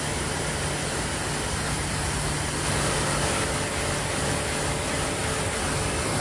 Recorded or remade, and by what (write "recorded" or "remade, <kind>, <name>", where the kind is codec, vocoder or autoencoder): recorded